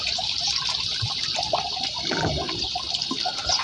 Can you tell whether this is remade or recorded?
recorded